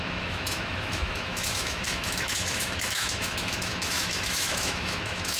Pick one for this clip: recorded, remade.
remade